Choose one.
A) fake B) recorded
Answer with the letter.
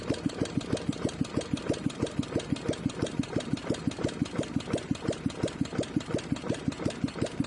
A